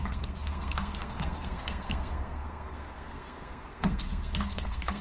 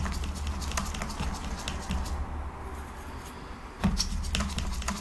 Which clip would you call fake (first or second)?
first